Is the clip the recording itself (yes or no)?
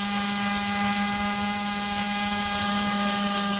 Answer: no